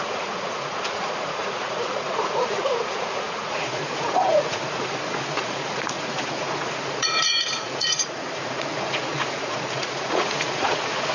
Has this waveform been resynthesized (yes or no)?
yes